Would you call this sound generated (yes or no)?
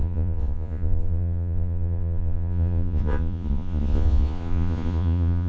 yes